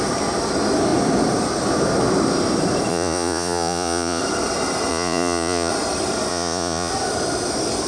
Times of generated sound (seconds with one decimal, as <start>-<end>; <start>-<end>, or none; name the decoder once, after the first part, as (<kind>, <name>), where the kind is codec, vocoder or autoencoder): 2.9-4.2 (vocoder, Vocos); 4.9-5.7; 6.3-6.9